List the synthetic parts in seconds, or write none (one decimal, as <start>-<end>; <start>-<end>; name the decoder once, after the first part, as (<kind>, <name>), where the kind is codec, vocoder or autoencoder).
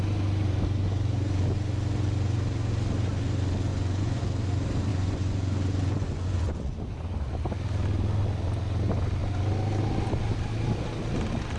3.7-4.2 (vocoder, Vocos); 4.9-6.8